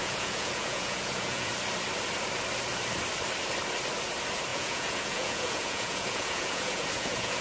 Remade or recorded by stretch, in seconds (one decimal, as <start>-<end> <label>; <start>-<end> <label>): 0.0-1.5 remade; 1.5-4.5 recorded; 4.5-7.4 remade